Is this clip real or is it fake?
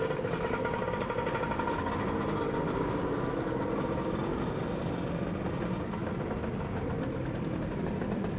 real